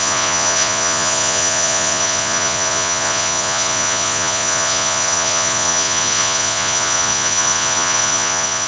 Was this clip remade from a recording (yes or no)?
yes